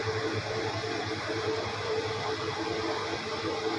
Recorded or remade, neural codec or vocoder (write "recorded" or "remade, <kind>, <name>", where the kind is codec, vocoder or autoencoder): recorded